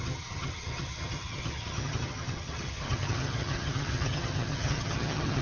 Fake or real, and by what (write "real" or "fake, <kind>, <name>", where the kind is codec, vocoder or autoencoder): fake, vocoder, HiFi-GAN